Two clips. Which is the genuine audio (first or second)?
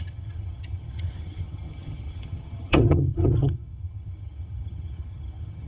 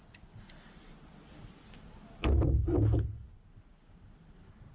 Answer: second